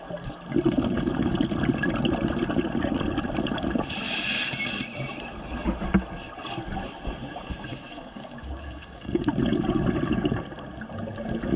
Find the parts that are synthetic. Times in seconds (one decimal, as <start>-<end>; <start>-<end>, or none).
7.7-9.2